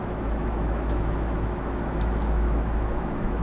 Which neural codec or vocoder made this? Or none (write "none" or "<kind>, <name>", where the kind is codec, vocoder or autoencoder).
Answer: autoencoder, DAC-VAE